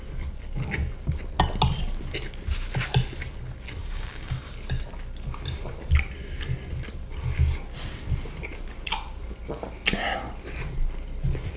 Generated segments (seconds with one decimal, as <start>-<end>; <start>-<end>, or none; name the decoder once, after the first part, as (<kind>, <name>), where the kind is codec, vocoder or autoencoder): 3.8-4.5 (codec, DAC)